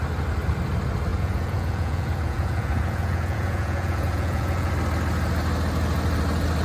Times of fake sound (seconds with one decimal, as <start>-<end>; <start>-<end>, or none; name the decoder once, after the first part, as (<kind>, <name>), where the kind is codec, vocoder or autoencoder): 1.1-4.7 (vocoder, Vocos)

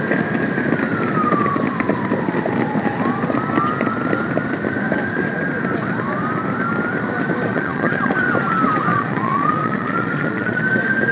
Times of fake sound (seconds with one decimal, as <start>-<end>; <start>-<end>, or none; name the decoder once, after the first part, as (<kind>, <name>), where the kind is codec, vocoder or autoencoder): 7.5-8.1 (vocoder, Vocos); 8.9-10.6

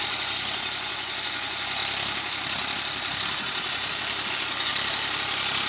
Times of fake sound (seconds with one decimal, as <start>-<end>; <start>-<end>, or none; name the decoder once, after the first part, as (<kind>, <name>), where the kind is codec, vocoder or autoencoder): 0.0-1.8 (vocoder, Vocos); 4.3-4.7

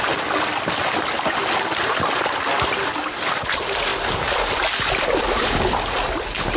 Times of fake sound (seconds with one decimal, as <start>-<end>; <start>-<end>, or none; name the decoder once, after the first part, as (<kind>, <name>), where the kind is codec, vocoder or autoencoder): none

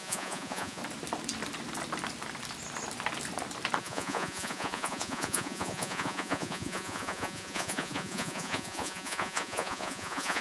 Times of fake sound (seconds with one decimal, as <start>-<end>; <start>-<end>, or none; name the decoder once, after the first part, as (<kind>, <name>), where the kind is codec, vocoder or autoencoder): 0.0-0.8 (vocoder, Vocos); 3.8-10.4

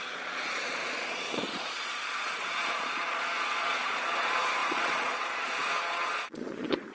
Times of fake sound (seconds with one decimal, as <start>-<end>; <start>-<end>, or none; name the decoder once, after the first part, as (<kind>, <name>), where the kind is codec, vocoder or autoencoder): 0.0-6.9 (vocoder, Vocos)

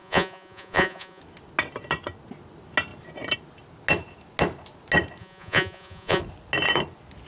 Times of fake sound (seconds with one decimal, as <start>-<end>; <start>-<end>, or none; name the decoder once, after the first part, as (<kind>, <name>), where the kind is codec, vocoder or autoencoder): 0.0-1.2 (vocoder, Vocos); 5.2-6.2